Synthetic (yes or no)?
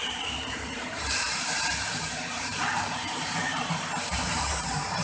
yes